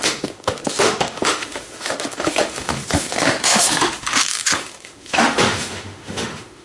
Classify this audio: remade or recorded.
remade